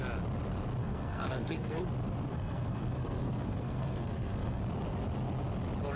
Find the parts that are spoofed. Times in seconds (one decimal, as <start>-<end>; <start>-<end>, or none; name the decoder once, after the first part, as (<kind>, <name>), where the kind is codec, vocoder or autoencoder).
0.8-1.8 (codec, SNAC); 2.3-4.6